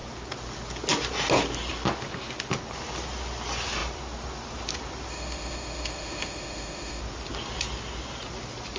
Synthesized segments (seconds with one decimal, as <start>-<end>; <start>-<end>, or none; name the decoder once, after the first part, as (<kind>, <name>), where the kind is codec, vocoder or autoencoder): 5.1-7.0 (autoencoder, DAC-VAE)